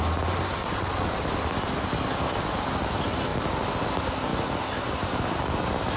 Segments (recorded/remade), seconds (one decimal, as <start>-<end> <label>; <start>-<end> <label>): 0.0-0.6 recorded; 0.6-1.2 remade; 1.2-6.0 recorded